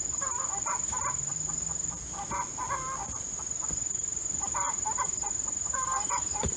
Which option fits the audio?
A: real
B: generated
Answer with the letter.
A